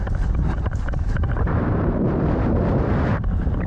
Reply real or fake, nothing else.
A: fake